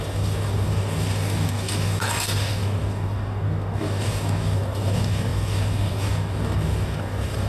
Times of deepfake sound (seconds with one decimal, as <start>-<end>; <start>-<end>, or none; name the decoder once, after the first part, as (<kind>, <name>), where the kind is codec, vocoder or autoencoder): 0.0-7.5 (codec, DAC)